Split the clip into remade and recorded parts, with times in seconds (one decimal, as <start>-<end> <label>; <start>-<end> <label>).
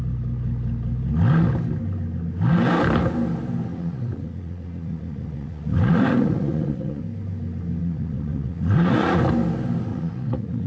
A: 0.0-3.7 recorded; 3.7-7.0 remade; 7.0-7.8 recorded; 7.8-9.2 remade; 9.2-9.9 recorded; 9.9-10.7 remade